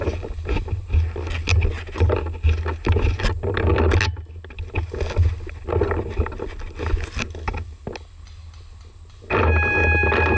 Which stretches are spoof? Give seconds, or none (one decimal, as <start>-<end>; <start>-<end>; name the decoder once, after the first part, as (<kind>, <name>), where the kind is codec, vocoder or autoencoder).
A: none

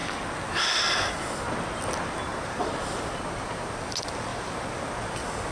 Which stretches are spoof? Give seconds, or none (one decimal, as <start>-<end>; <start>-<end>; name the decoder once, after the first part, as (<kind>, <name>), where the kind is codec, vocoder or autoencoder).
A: 2.3-3.1 (vocoder, BigVGAN v2); 4.3-4.9

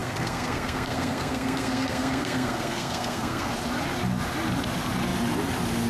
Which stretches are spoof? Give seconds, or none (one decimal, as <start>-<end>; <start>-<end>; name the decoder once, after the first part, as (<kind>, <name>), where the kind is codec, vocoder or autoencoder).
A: 0.0-3.5 (codec, SNAC)